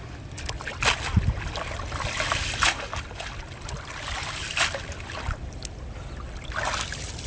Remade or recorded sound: recorded